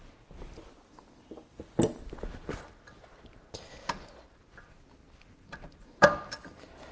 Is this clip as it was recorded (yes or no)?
yes